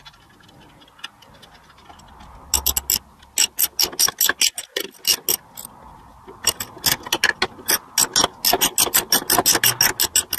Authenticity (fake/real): real